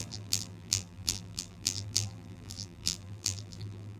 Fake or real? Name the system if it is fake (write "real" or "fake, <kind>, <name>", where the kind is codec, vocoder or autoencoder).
fake, vocoder, BigVGAN v2